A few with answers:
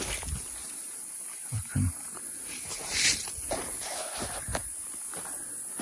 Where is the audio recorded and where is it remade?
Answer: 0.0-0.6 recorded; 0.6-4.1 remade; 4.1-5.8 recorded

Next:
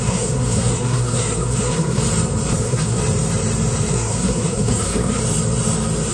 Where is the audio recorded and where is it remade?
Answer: 0.0-2.0 remade; 2.0-2.6 recorded; 2.6-3.0 remade; 3.0-3.9 recorded; 3.9-5.2 remade; 5.2-6.1 recorded

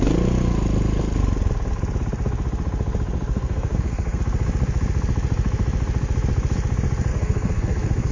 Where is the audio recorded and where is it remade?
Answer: 0.0-3.3 recorded; 3.3-4.2 remade; 4.2-7.1 recorded; 7.1-8.1 remade

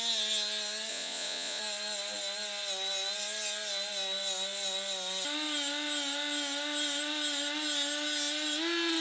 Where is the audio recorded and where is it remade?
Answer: 0.0-0.9 recorded; 0.9-1.6 remade; 1.6-9.0 recorded

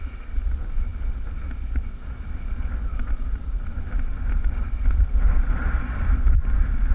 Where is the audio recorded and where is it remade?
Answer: 0.0-6.9 recorded

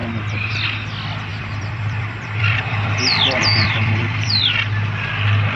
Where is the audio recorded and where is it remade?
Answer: 0.0-1.3 recorded; 1.3-4.4 remade; 4.4-5.6 recorded

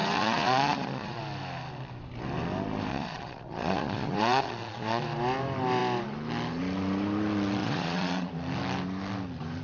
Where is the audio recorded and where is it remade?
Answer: 0.0-1.2 remade; 1.2-2.9 recorded; 2.9-5.0 remade; 5.0-7.6 recorded; 7.6-8.3 remade; 8.3-9.6 recorded